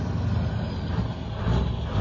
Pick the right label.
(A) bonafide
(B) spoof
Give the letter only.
A